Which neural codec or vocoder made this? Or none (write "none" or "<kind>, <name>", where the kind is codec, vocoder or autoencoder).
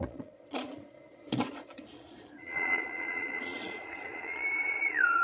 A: vocoder, Vocos